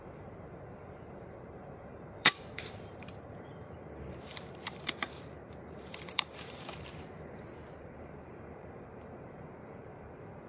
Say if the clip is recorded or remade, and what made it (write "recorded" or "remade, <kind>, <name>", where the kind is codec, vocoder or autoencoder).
remade, vocoder, BigVGAN v2